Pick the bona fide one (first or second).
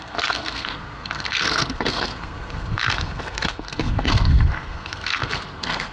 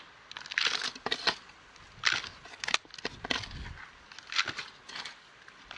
second